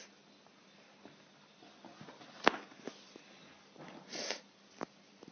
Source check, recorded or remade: recorded